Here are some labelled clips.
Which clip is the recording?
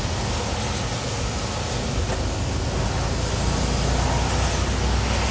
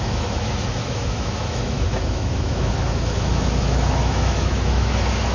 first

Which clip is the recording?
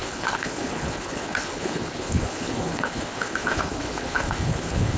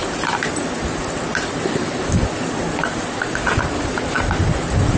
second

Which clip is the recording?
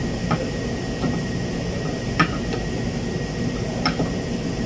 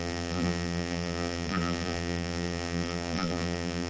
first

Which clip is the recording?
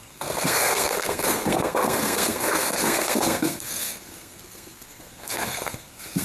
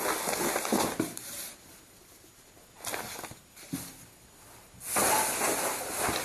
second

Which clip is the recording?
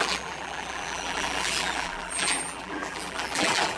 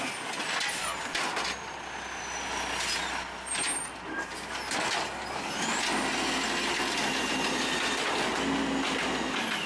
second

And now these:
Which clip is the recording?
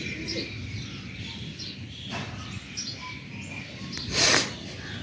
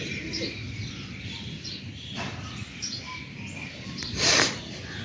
first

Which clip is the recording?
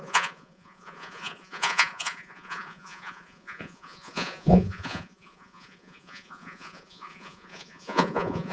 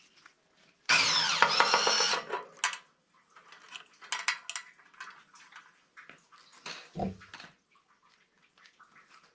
second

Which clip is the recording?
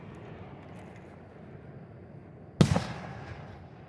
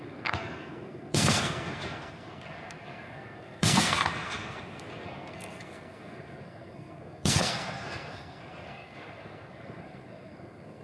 first